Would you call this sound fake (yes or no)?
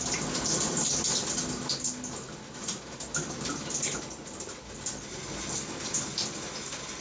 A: no